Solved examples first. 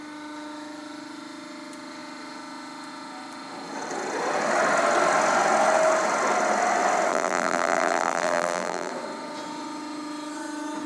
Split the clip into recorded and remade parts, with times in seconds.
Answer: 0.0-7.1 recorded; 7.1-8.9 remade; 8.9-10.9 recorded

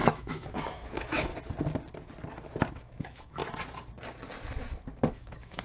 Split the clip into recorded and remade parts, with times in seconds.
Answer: 0.0-1.3 remade; 1.3-2.7 recorded; 2.7-3.4 remade; 3.4-5.1 recorded; 5.1-5.6 remade

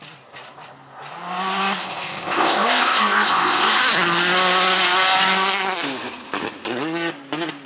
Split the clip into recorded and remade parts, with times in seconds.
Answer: 0.0-1.8 recorded; 1.8-3.8 remade; 3.8-7.7 recorded